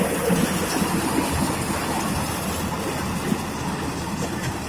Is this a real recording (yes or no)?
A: yes